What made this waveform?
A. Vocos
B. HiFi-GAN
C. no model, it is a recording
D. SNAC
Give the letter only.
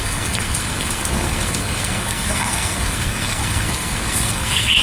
D